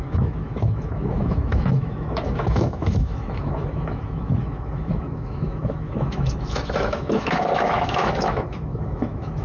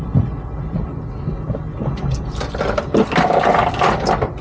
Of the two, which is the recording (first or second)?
second